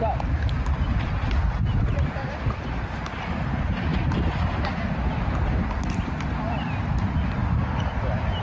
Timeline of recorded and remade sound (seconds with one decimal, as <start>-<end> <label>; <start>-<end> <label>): 0.0-8.4 recorded